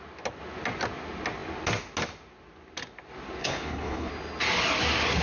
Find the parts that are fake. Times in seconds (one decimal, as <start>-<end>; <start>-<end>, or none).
3.4-4.1